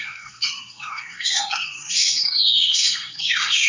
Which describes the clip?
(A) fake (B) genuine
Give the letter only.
A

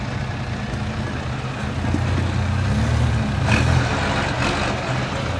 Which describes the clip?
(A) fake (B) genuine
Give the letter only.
B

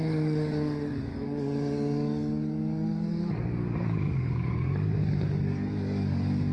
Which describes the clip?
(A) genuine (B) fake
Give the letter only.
B